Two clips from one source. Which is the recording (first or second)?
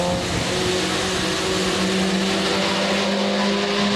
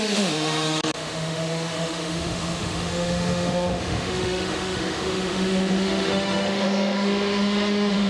first